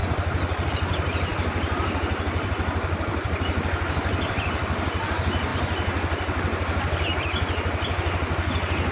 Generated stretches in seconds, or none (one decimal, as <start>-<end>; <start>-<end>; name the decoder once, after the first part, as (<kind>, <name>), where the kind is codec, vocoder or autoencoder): 0.0-5.5 (vocoder, BigVGAN v2)